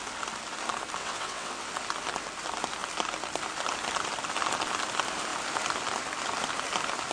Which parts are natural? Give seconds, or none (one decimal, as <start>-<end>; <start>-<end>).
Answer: 0.0-1.0; 1.7-7.1